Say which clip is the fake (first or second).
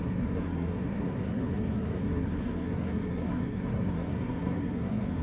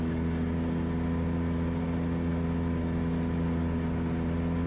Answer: first